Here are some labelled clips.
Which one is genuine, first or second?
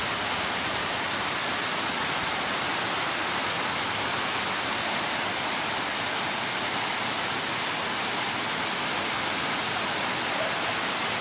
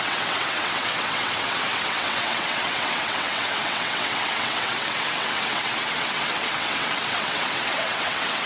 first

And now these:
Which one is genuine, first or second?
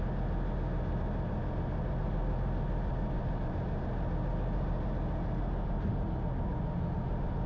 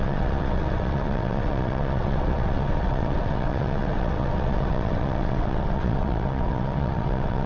first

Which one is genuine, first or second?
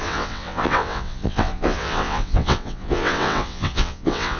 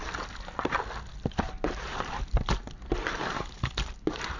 second